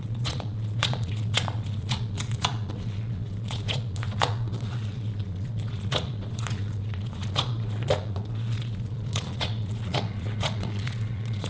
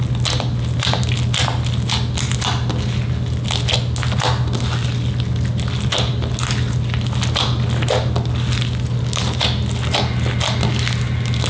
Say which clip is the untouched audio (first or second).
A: second